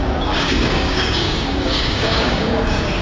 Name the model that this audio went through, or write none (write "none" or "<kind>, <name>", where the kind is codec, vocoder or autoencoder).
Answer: codec, DAC